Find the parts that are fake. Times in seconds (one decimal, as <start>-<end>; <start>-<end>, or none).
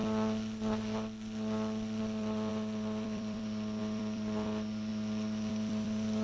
2.0-4.9; 5.5-6.2